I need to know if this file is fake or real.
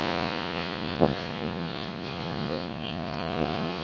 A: fake